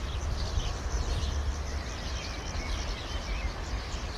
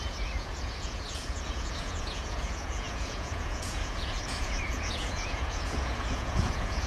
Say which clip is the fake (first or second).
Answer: second